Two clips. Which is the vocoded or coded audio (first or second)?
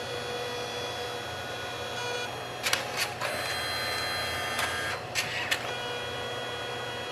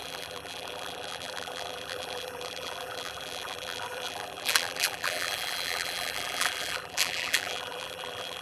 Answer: second